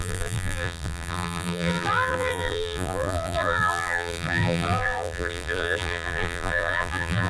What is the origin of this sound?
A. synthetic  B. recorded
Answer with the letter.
A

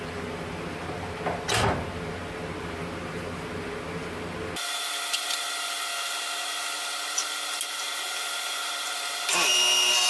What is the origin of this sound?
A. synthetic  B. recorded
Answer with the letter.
B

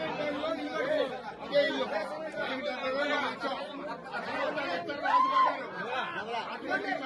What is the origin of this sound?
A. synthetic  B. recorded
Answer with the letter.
B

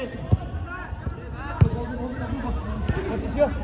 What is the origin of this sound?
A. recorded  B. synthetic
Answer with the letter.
A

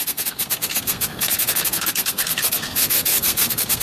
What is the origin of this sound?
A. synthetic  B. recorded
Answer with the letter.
A